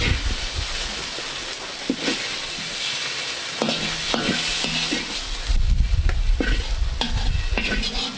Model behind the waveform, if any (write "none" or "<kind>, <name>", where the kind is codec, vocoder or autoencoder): none